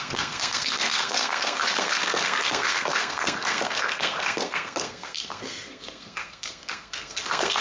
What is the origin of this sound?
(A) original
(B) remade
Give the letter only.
B